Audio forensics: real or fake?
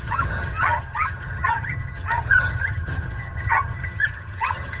fake